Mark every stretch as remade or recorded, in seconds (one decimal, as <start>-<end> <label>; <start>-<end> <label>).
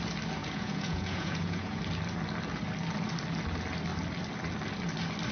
0.0-0.4 recorded; 0.4-1.8 remade; 1.8-5.3 recorded